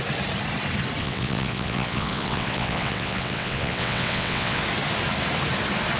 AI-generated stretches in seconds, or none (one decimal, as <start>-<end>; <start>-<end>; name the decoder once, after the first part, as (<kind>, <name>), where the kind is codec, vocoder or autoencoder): 1.0-4.6 (vocoder, WaveNeXt)